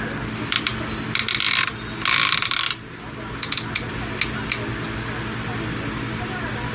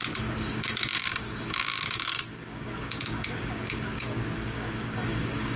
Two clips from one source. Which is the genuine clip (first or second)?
first